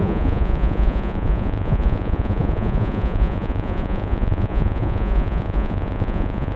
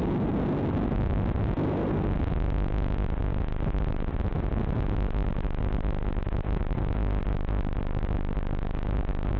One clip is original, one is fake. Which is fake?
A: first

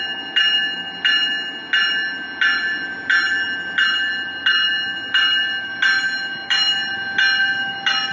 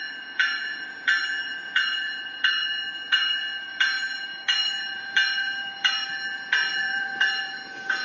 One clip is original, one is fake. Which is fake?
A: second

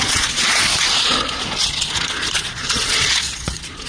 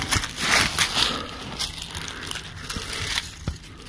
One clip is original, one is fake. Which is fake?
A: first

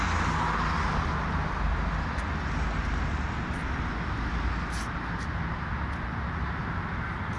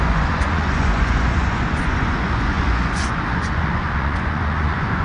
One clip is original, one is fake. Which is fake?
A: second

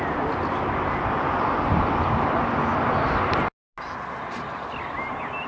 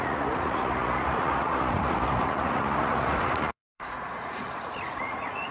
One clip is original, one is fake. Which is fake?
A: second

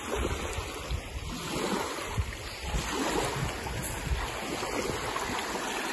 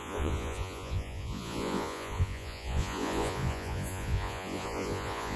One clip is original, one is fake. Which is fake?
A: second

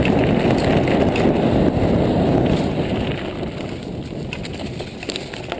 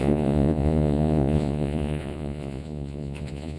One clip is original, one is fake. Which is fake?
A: second